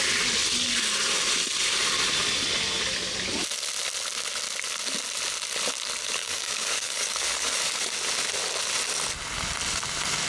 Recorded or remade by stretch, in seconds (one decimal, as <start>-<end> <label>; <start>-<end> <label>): 0.0-6.2 recorded; 6.2-7.9 remade; 7.9-10.3 recorded